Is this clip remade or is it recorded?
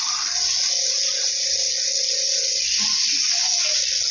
recorded